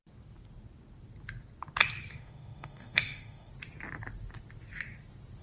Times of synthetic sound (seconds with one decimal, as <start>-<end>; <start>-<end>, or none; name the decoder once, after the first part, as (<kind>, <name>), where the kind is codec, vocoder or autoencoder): 2.1-3.5 (autoencoder, DAC-VAE)

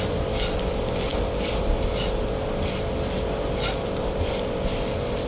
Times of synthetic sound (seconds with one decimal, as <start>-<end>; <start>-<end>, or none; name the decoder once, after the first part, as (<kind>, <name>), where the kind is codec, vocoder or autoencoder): none

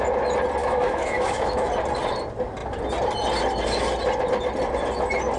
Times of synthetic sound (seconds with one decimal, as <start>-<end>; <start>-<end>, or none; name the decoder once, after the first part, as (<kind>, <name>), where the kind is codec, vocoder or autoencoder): 0.6-1.7 (autoencoder, DAC-VAE)